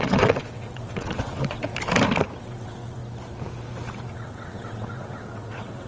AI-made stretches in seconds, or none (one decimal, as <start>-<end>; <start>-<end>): 0.0-1.7; 2.4-3.0; 4.1-5.9